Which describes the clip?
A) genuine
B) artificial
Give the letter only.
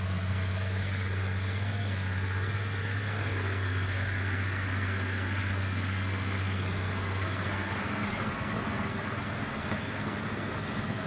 B